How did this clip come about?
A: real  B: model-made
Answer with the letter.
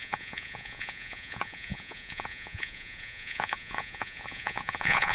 B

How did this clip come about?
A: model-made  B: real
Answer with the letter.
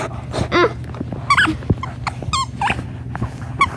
B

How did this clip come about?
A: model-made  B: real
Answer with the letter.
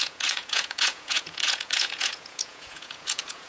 A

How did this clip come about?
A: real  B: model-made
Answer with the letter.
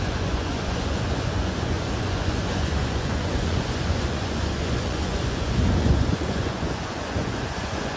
B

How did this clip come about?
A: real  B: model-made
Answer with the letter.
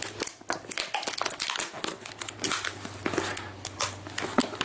A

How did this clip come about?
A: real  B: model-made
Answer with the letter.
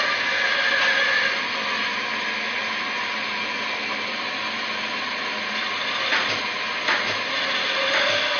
A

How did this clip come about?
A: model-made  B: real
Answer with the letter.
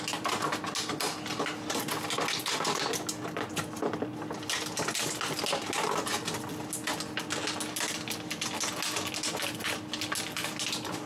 B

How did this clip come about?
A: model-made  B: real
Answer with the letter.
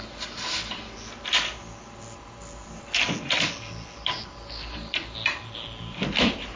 B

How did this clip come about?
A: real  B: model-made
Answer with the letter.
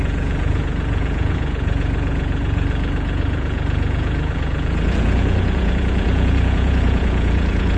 B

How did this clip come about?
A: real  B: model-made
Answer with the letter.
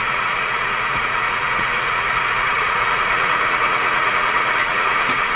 B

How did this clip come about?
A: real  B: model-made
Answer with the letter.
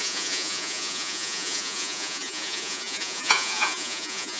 B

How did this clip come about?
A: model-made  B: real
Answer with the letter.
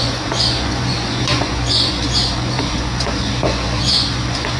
A